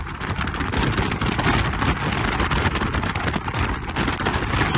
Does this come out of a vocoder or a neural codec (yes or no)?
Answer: no